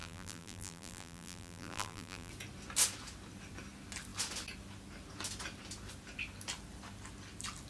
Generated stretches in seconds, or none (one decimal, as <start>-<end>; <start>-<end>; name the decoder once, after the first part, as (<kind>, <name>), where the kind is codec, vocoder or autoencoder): 0.0-2.3 (vocoder, BigVGAN v2)